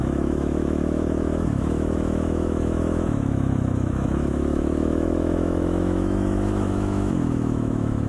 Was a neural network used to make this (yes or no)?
yes